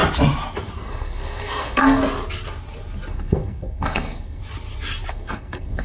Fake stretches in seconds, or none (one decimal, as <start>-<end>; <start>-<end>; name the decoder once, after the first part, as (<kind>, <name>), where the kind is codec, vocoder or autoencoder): 0.8-2.0 (codec, SNAC); 3.1-4.4; 5.1-5.8